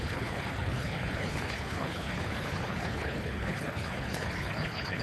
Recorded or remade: remade